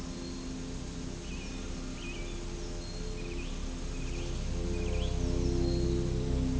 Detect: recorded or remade recorded